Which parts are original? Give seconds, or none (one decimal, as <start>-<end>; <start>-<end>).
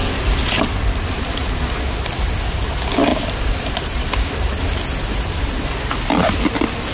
0.6-3.1; 4.0-6.9